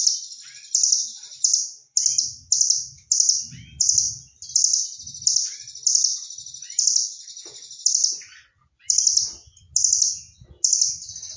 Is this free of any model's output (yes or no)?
yes